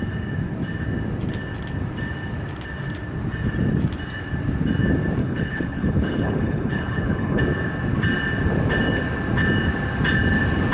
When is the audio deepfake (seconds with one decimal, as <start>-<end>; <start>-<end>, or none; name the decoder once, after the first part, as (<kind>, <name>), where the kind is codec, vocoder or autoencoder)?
5.2-7.4 (codec, HILCodec)